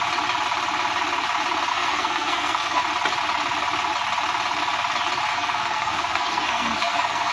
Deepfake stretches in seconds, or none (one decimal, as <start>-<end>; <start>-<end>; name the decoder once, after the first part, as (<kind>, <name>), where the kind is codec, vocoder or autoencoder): 1.7-2.8 (codec, SNAC); 5.3-7.3